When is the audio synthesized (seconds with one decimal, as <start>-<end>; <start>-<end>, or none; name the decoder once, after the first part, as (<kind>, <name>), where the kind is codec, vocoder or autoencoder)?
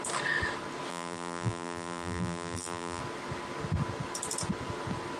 0.9-3.0 (vocoder, BigVGAN v2)